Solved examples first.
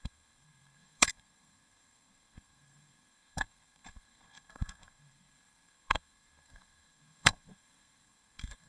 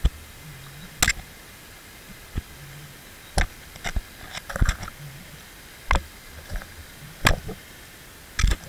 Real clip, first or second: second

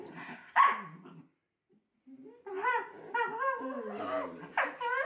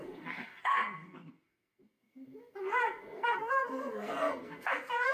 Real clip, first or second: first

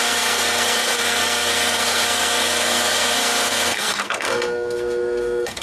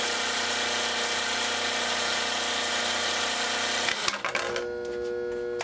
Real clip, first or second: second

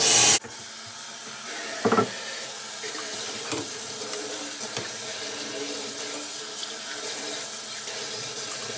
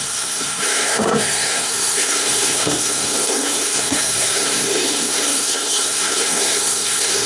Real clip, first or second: first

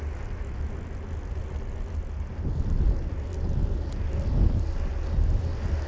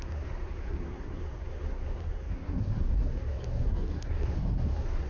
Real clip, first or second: first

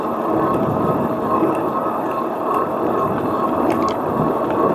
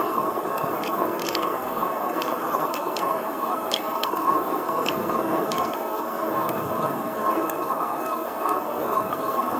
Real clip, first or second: first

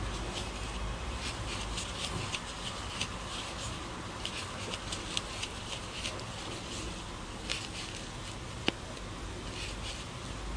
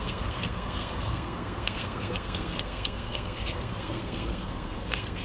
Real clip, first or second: first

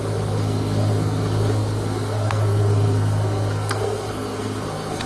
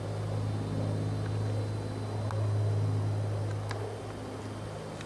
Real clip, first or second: second